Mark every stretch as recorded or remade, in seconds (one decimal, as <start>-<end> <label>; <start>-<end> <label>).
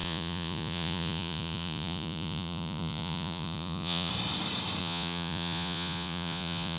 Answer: 0.0-4.1 remade; 4.1-4.8 recorded; 4.8-6.8 remade